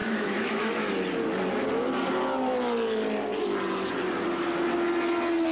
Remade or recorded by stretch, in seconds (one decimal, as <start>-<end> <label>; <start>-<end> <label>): 0.0-0.9 remade; 0.9-5.5 recorded